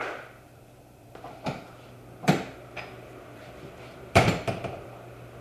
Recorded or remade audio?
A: remade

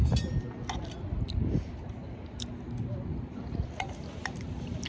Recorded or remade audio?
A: recorded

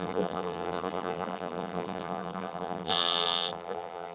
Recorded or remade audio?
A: remade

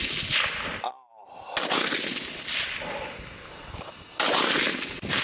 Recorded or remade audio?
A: recorded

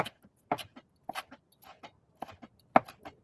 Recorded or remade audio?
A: recorded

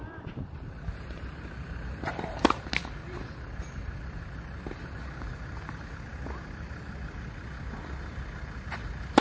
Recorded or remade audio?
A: recorded